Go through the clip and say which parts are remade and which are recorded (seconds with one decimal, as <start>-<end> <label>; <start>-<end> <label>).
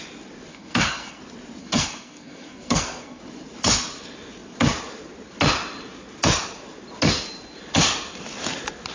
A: 0.0-0.5 recorded; 0.5-1.2 remade; 1.2-1.6 recorded; 1.6-3.2 remade; 3.2-8.9 recorded